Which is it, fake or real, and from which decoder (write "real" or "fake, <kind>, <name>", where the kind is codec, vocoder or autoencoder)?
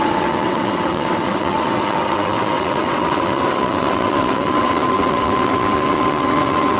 fake, vocoder, WaveNeXt